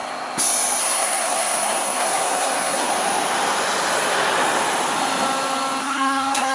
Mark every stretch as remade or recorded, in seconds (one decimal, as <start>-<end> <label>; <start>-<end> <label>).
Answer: 0.0-0.8 recorded; 0.8-2.9 remade; 2.9-5.8 recorded; 5.8-6.5 remade